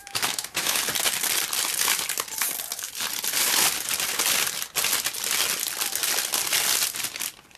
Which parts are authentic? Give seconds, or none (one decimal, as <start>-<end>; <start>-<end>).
0.8-7.6